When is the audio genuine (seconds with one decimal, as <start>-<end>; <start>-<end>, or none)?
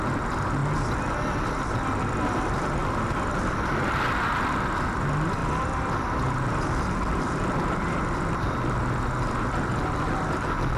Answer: 0.0-2.8; 4.5-5.4; 9.0-10.8